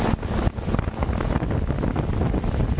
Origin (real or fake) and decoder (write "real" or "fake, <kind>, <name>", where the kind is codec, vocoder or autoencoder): real